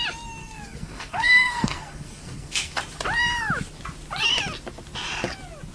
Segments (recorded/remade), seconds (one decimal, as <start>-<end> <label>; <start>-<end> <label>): 0.0-0.4 recorded; 0.4-2.8 remade; 2.8-5.7 recorded

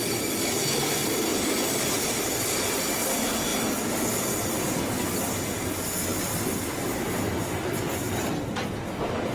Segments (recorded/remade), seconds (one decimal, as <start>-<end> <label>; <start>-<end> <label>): 0.0-1.3 recorded; 1.3-2.4 remade; 2.4-9.3 recorded

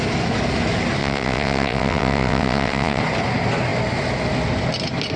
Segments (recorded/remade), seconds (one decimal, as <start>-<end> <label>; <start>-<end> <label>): 0.0-1.0 recorded; 1.0-3.0 remade; 3.0-5.2 recorded

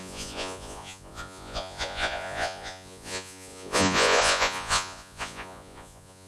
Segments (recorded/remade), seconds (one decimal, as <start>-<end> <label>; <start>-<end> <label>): 0.0-6.3 remade

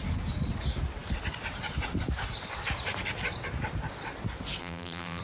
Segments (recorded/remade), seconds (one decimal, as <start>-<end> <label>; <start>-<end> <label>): 0.0-4.6 recorded; 4.6-5.2 remade

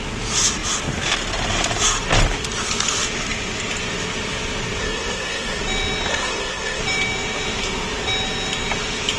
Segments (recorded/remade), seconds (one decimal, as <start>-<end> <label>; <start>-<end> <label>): 0.0-4.8 recorded; 4.8-5.6 remade; 5.6-6.1 recorded; 6.1-6.8 remade; 6.8-9.2 recorded